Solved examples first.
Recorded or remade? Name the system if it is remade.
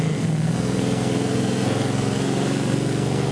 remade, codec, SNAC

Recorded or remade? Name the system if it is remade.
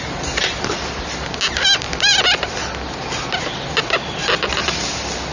recorded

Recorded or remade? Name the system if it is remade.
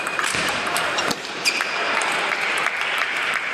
remade, vocoder, BigVGAN v2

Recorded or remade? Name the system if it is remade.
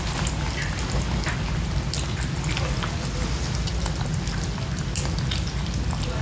recorded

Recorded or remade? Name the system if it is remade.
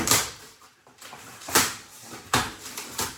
remade, vocoder, BigVGAN v2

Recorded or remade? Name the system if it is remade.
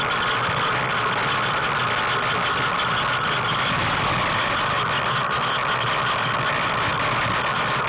recorded